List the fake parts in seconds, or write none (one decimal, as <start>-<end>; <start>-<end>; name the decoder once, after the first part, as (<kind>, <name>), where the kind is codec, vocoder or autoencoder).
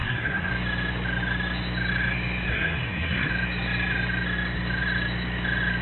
0.0-0.5 (codec, SNAC); 2.5-3.3